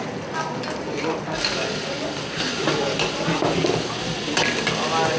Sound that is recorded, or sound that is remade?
recorded